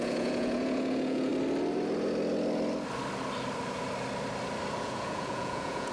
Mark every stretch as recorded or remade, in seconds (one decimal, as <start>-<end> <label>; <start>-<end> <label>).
0.0-1.3 remade; 1.3-4.8 recorded; 4.8-5.9 remade

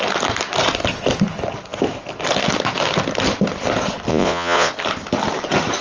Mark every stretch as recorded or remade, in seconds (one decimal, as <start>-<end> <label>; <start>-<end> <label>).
0.0-4.1 recorded; 4.1-4.7 remade; 4.7-5.8 recorded

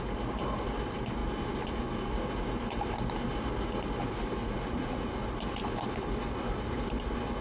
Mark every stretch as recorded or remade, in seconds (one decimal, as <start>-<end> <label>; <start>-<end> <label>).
0.0-4.4 recorded; 4.4-5.1 remade; 5.1-7.4 recorded

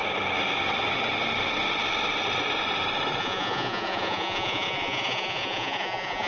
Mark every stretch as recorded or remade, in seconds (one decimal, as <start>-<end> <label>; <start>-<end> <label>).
0.0-3.2 recorded; 3.2-6.3 remade

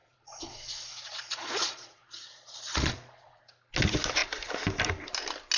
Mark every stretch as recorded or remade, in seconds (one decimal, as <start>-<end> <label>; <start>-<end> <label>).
0.0-3.4 remade; 3.4-5.6 recorded

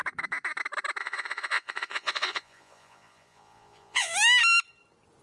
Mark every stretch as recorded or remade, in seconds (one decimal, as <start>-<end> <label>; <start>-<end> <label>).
0.0-1.0 recorded; 1.0-4.1 remade; 4.1-5.2 recorded

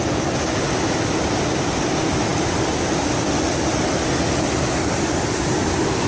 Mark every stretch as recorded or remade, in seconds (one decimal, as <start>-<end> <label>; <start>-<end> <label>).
0.0-6.1 recorded